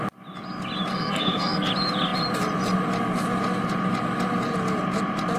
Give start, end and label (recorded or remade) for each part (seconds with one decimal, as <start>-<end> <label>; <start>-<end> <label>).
0.0-0.9 recorded; 0.9-1.7 remade; 1.7-5.4 recorded